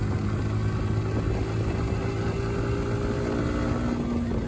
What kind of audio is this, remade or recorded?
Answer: recorded